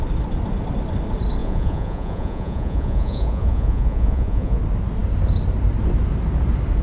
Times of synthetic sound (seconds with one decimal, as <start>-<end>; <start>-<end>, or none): 1.4-4.6